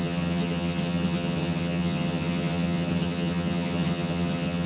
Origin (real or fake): fake